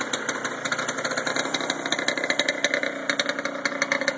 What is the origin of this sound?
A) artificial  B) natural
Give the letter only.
B